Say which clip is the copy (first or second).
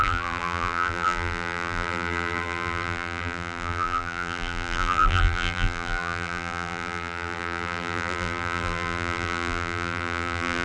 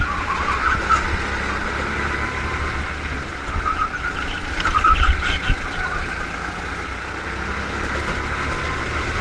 first